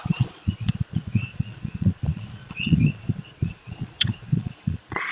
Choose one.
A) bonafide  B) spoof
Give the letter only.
B